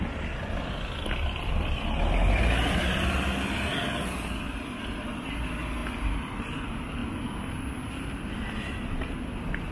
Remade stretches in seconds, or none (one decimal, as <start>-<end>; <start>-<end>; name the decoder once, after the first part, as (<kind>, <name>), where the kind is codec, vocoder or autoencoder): none